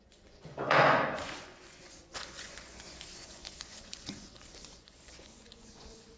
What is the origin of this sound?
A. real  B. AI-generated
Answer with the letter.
B